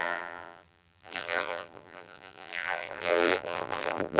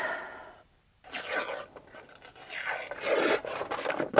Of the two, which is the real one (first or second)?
second